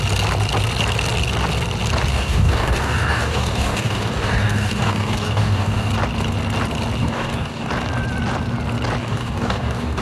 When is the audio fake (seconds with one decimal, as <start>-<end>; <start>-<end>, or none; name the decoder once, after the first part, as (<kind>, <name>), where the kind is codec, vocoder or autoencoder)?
2.1-5.9 (codec, DAC); 7.0-7.7; 9.0-10.0